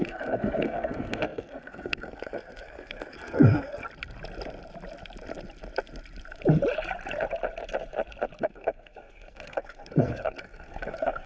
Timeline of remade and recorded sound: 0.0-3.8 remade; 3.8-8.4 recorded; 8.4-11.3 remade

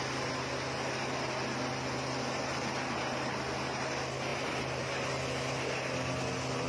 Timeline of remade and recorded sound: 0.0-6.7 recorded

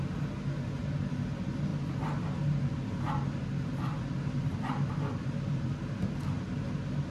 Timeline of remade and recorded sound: 0.0-1.7 recorded; 1.7-6.0 remade; 6.0-7.1 recorded

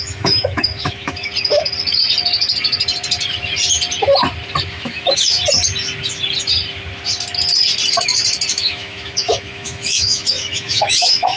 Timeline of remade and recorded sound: 0.0-1.3 remade; 1.3-4.7 recorded; 4.7-5.4 remade; 5.4-8.5 recorded; 8.5-11.4 remade